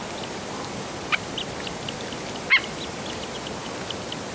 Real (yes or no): yes